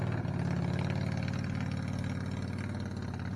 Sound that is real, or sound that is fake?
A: real